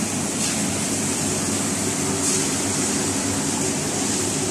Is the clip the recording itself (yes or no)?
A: yes